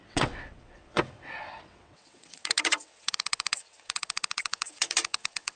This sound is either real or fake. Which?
fake